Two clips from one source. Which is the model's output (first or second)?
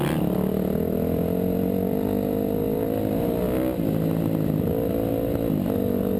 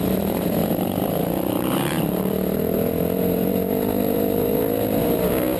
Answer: second